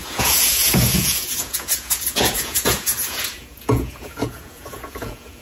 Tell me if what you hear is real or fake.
fake